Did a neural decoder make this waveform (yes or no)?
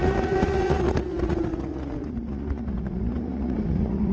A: yes